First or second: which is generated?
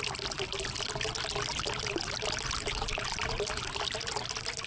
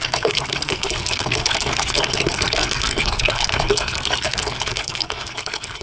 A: second